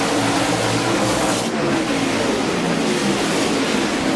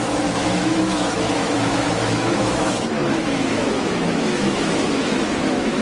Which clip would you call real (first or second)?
first